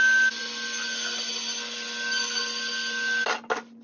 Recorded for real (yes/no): yes